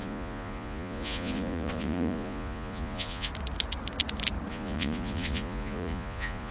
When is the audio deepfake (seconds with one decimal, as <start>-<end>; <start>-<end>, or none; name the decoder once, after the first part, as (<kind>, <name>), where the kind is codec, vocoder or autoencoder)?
0.0-3.3 (vocoder, Vocos); 4.5-6.5

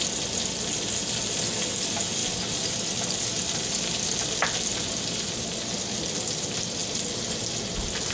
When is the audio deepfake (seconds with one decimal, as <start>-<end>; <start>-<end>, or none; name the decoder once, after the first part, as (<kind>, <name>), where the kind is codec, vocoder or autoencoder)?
none

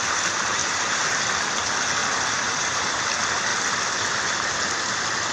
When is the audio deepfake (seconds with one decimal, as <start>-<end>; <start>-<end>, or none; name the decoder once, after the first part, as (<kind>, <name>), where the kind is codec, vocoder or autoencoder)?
0.6-1.2 (vocoder, BigVGAN v2); 2.0-2.8

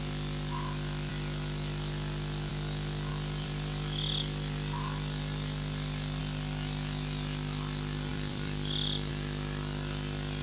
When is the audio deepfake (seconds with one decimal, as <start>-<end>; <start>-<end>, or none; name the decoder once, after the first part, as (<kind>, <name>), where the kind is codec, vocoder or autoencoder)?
3.1-6.2 (vocoder, BigVGAN v2); 8.1-9.1

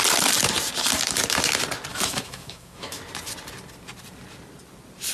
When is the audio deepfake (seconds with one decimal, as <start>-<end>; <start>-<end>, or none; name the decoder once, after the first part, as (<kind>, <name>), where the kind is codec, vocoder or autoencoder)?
1.9-3.0 (autoencoder, DAC-VAE)

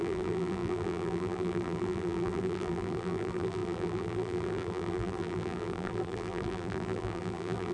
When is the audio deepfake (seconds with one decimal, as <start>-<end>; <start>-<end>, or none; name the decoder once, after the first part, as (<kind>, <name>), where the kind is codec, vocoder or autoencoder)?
0.0-7.7 (vocoder, BigVGAN v2)

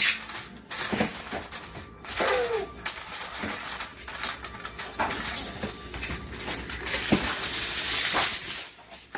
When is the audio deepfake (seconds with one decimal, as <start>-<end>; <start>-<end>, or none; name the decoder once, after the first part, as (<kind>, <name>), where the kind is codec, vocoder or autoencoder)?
none

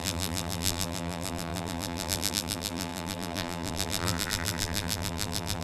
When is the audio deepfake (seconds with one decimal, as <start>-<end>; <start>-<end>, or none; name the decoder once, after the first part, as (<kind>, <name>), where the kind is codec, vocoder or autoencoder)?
0.0-5.6 (vocoder, BigVGAN v2)